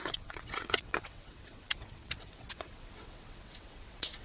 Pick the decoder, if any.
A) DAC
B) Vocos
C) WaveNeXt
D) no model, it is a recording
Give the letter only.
C